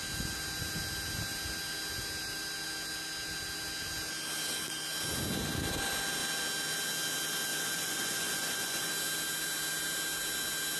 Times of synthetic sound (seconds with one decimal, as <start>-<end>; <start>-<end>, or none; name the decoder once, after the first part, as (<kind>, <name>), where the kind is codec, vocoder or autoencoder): 7.5-8.9 (vocoder, Vocos)